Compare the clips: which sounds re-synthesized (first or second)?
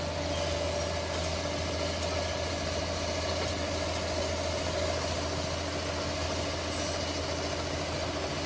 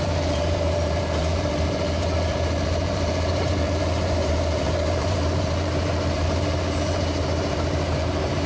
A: second